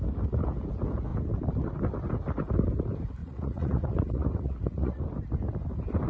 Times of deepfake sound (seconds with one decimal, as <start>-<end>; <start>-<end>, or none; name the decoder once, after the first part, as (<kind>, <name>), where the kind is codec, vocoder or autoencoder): 3.2-5.0 (vocoder, Vocos)